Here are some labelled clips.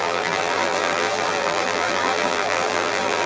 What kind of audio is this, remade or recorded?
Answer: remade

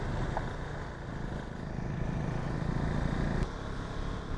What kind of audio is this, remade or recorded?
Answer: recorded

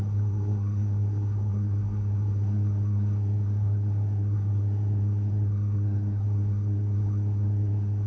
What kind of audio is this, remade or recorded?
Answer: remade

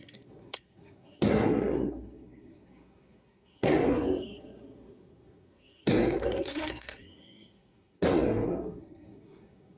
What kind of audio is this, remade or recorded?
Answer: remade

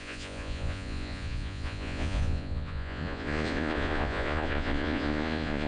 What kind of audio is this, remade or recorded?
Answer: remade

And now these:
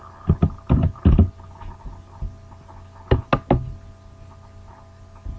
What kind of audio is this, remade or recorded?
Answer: recorded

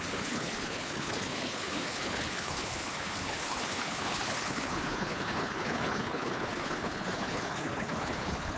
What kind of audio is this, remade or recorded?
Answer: remade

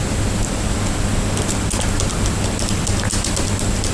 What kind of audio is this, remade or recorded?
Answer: recorded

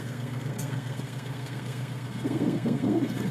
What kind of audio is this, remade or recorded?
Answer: remade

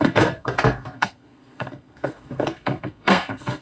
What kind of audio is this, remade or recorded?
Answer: remade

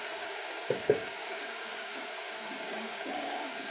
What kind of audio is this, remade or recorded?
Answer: remade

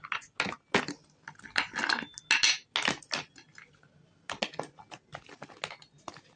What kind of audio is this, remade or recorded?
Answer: recorded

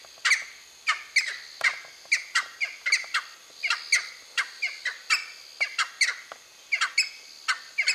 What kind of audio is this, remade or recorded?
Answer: recorded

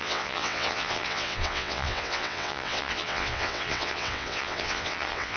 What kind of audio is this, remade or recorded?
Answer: remade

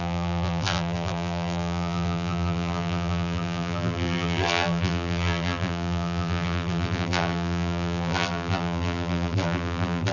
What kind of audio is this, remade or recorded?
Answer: remade